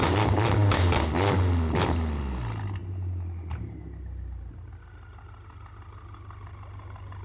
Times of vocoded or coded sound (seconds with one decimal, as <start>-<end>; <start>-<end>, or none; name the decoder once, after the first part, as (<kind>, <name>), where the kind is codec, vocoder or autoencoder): none